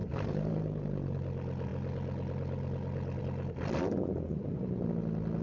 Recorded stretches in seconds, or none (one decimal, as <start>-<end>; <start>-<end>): 0.9-5.4